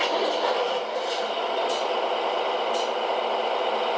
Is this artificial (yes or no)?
no